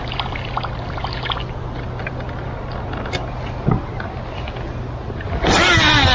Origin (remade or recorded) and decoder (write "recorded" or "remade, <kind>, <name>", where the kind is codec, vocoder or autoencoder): recorded